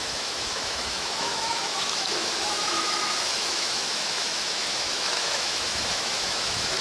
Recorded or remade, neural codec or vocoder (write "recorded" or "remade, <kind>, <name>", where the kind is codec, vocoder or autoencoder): remade, autoencoder, DAC-VAE